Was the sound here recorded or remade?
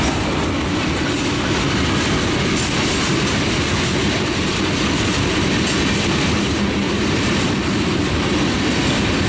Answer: recorded